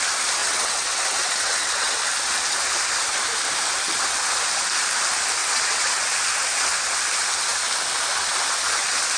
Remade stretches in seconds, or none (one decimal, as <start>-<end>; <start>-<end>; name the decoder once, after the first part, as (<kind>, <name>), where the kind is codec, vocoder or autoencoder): 0.4-2.0 (vocoder, WaveNeXt); 5.4-5.9